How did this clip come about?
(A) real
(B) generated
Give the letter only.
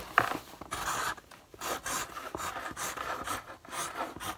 A